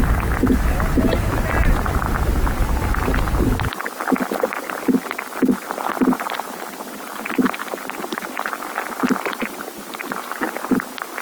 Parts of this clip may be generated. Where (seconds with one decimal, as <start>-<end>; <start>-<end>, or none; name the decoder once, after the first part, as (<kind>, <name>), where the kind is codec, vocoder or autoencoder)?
1.6-2.4 (vocoder, BigVGAN v2)